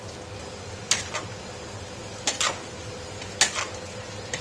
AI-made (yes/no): no